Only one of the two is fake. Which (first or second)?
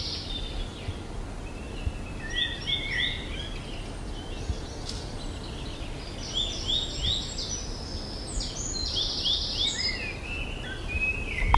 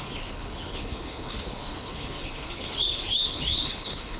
second